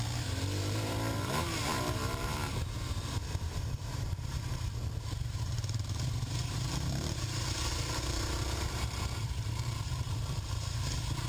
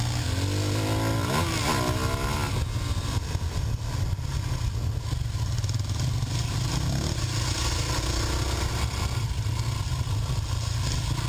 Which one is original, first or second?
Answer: second